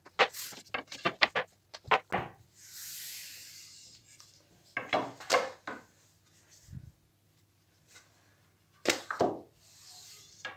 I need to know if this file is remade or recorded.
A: recorded